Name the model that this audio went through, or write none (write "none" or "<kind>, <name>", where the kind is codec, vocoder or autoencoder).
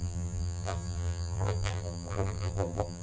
vocoder, BigVGAN v2